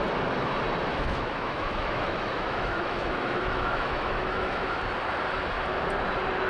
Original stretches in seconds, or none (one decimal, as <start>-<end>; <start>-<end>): 0.0-0.9; 4.8-6.5